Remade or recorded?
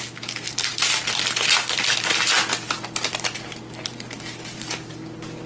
recorded